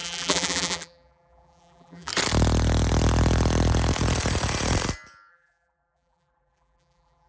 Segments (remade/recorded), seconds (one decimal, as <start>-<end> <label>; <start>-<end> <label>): 0.0-2.1 remade; 2.1-5.3 recorded; 5.3-7.3 remade

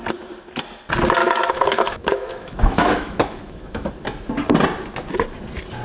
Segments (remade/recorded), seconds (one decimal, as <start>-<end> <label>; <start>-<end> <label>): 0.0-1.2 recorded; 1.2-3.9 remade; 3.9-5.8 recorded